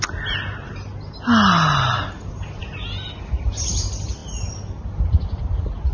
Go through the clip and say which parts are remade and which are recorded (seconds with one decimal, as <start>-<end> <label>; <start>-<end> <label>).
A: 0.0-5.9 recorded